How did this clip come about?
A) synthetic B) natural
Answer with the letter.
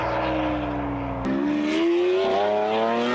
B